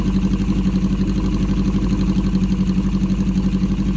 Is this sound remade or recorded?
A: recorded